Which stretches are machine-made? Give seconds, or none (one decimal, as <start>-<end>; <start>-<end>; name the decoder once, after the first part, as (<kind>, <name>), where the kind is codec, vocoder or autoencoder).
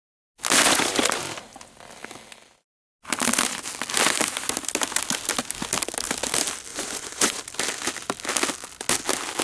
6.7-7.4 (vocoder, Vocos)